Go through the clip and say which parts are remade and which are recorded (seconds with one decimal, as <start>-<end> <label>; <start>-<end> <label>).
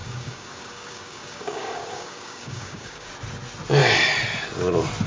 0.0-3.1 remade; 3.1-5.1 recorded